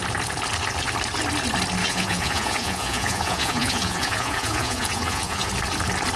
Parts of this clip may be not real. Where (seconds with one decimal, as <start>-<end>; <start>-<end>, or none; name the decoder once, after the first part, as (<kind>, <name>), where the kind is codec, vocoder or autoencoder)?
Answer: 1.8-5.5 (vocoder, Vocos)